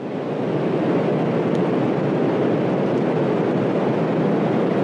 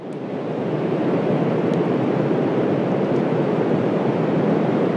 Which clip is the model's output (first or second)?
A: second